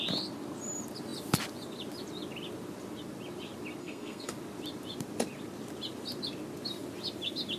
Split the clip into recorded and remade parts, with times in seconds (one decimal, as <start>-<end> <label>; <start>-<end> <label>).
0.0-3.8 recorded; 3.8-4.3 remade; 4.3-7.6 recorded